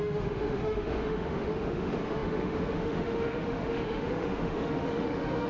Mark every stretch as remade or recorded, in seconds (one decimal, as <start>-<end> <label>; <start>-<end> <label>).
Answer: 0.0-5.5 remade